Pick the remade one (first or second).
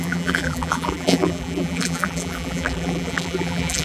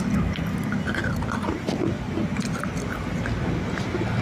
first